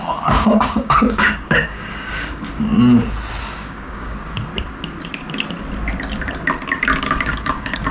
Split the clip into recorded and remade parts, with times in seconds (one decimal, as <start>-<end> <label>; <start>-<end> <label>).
0.0-2.7 remade; 2.7-3.4 recorded; 3.4-4.5 remade; 4.5-7.0 recorded; 7.0-7.9 remade